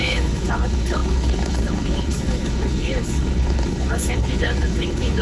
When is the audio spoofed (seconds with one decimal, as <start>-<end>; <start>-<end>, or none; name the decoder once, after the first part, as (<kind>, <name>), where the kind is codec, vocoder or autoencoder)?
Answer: 0.0-5.2 (codec, HILCodec)